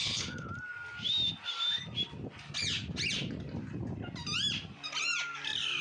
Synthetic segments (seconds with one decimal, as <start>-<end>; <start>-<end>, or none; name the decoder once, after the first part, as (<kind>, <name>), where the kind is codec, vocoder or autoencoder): 0.0-0.5 (codec, HILCodec)